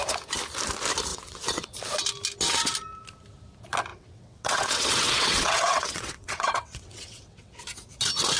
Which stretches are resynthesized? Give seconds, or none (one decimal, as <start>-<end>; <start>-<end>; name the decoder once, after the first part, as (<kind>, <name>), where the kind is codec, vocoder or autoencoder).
1.1-1.7 (vocoder, WaveNeXt); 3.9-7.6